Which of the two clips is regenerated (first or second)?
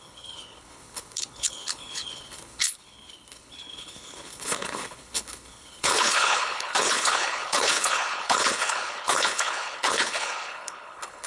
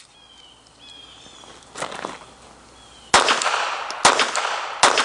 first